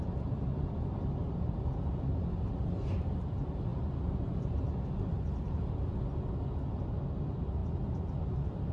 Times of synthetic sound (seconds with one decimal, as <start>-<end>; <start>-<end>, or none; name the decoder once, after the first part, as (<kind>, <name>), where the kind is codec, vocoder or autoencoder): none